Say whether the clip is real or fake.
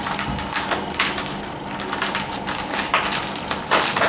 real